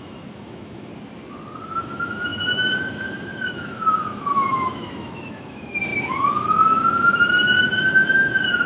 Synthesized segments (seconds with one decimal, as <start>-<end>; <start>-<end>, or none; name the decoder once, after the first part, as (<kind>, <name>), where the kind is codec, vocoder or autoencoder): 0.0-0.9 (autoencoder, DAC-VAE); 1.6-8.7